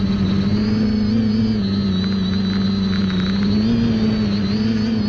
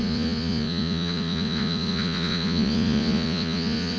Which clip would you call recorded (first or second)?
first